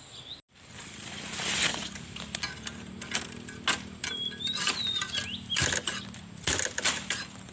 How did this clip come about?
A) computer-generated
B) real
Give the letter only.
B